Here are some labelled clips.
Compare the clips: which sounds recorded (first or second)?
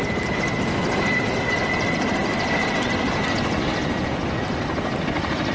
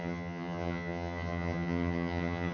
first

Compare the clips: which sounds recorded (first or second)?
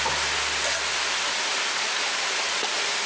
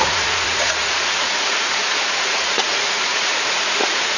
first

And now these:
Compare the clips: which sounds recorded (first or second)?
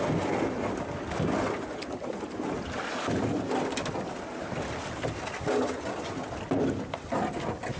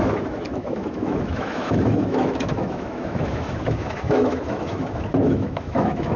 first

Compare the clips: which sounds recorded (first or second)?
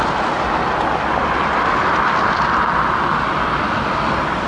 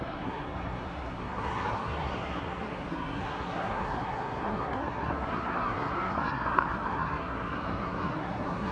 first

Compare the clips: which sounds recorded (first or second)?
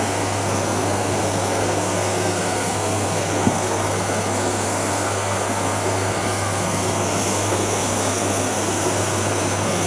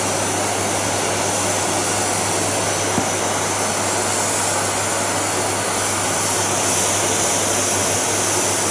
second